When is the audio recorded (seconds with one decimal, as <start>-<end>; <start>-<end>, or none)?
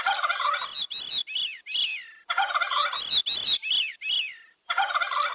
0.0-5.3